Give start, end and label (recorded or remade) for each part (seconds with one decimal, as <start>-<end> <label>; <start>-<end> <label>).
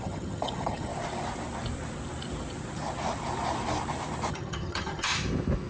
0.0-0.9 remade; 0.9-4.3 recorded; 4.3-5.1 remade; 5.1-5.7 recorded